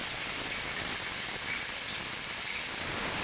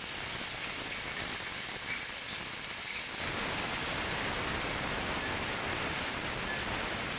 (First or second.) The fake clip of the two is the first